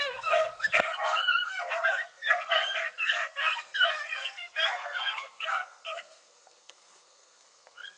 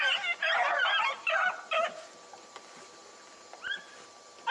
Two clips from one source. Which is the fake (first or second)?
first